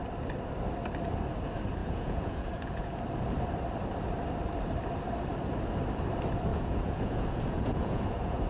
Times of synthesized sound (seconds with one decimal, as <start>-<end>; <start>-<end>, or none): 1.8-3.0; 6.5-8.5